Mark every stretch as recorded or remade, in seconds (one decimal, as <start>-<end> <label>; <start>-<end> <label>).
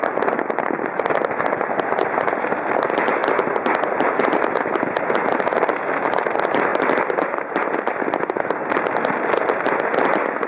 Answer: 0.0-10.5 recorded